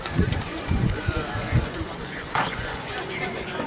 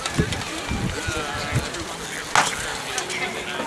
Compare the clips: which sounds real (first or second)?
second